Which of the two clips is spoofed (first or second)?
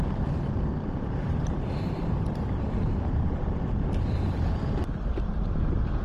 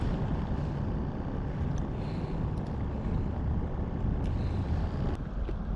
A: first